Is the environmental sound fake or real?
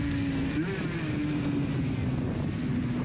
real